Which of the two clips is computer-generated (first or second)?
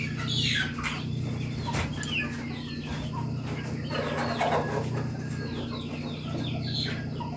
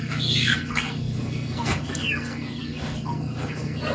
second